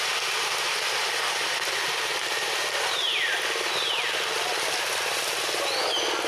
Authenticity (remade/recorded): recorded